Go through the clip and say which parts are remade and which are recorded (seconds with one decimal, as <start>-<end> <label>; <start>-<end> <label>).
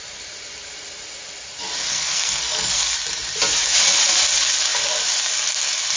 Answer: 0.0-1.9 recorded; 1.9-2.9 remade; 2.9-6.0 recorded